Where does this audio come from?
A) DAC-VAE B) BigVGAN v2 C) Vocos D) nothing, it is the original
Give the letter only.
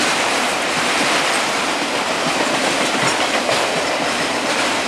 D